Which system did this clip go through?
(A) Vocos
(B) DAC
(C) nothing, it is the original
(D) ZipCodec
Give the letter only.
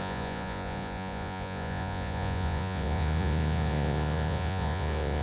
A